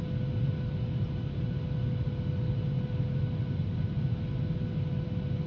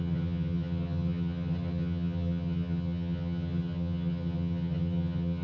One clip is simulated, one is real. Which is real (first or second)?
first